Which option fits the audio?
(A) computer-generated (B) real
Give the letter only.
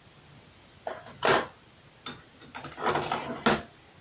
B